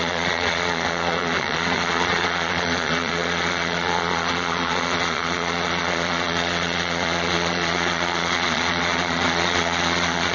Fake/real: fake